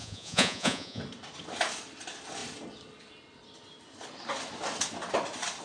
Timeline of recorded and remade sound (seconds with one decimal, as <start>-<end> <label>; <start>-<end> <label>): 0.0-1.0 remade; 1.0-5.6 recorded